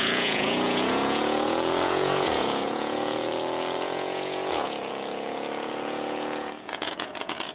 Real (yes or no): no